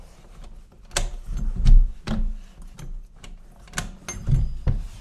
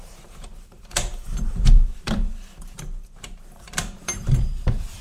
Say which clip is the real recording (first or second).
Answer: first